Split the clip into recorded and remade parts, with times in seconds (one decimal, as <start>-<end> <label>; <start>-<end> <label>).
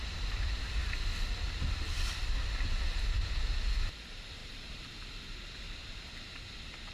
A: 0.0-6.9 recorded